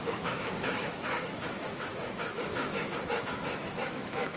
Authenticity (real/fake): fake